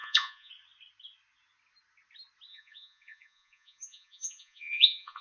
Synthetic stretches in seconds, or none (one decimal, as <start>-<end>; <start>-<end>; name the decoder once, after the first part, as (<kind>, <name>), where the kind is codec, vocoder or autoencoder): 0.0-0.5 (vocoder, Vocos); 2.5-5.2